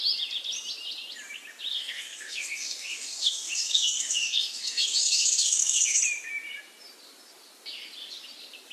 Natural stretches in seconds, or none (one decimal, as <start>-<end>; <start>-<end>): 0.0-1.7; 6.0-8.7